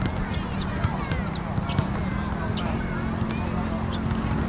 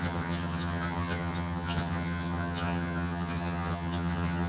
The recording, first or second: first